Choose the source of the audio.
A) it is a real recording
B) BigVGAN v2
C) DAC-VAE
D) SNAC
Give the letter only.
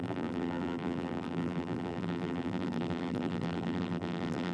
B